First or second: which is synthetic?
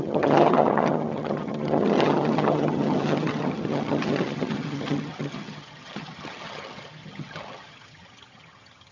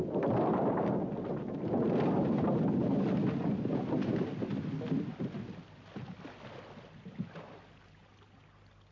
first